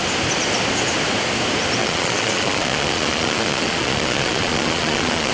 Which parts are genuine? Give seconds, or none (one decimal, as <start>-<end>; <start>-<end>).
0.0-1.8